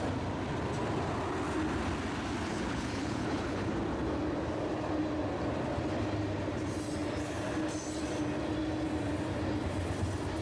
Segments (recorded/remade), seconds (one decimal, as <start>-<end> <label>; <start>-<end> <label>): 0.0-2.5 recorded; 2.5-3.7 remade; 3.7-10.4 recorded